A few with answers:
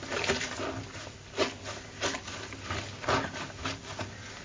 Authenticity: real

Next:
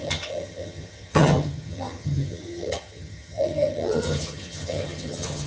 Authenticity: fake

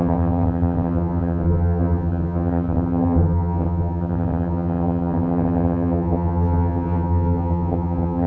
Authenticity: fake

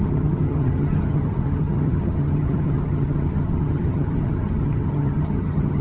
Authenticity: fake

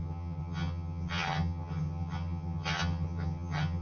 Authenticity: fake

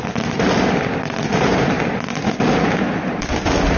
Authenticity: real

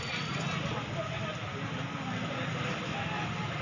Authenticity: real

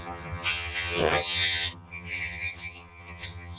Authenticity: fake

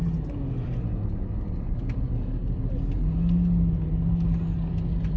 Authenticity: real